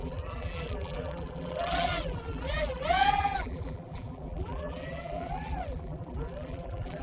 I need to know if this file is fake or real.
fake